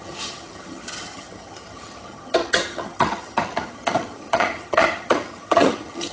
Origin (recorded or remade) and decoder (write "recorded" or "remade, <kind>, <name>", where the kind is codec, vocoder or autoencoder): remade, vocoder, HiFi-GAN